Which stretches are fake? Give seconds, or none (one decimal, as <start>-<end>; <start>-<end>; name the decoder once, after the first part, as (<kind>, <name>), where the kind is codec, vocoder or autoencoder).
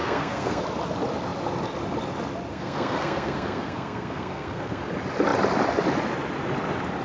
0.0-0.6 (codec, SNAC); 2.5-4.8